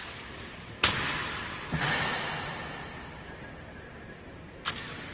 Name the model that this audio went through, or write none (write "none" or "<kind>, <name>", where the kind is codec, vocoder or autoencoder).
none